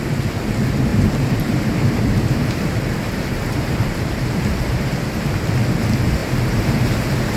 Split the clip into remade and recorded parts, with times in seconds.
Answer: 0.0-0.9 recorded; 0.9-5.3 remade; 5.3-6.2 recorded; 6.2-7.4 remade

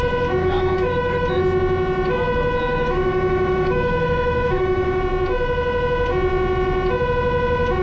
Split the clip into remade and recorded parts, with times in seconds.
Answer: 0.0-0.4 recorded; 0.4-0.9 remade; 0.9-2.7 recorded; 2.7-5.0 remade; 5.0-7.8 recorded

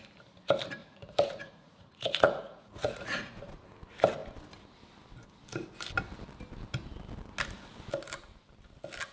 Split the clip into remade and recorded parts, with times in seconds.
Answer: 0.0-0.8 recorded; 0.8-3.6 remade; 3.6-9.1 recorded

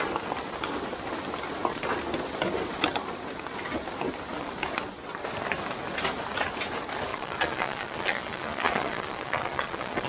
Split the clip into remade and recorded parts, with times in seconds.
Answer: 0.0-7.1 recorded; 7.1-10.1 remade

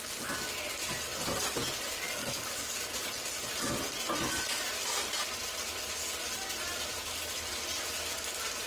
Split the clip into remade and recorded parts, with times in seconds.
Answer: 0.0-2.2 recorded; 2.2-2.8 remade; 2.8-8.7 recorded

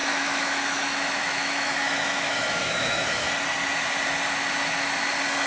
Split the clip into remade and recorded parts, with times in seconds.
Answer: 0.0-3.3 remade; 3.3-5.5 recorded

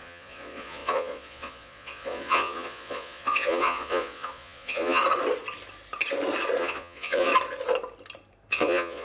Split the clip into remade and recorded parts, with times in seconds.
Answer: 0.0-5.0 remade; 5.0-6.6 recorded; 6.6-7.3 remade; 7.3-8.5 recorded; 8.5-9.0 remade